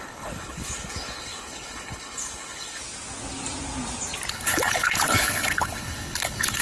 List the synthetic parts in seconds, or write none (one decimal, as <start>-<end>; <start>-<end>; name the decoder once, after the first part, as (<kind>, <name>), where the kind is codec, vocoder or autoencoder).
0.0-2.8 (codec, HILCodec); 4.3-6.6